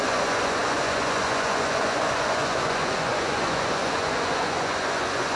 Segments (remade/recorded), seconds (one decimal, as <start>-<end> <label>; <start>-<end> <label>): 0.0-5.4 remade